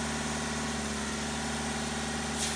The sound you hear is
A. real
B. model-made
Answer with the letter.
A